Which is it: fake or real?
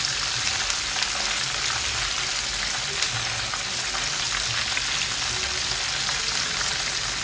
real